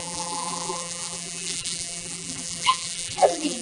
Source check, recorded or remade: remade